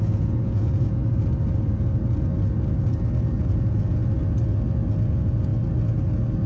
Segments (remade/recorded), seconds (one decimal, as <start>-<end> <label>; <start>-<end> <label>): 0.0-1.0 remade; 1.0-3.5 recorded; 3.5-4.0 remade; 4.0-5.1 recorded; 5.1-5.5 remade; 5.5-6.5 recorded